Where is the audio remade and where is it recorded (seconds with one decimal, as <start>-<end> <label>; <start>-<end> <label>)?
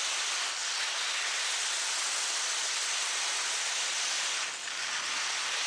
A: 0.0-5.7 recorded